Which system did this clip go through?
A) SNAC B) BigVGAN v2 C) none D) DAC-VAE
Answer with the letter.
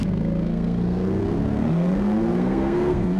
A